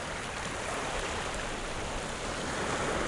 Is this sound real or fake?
real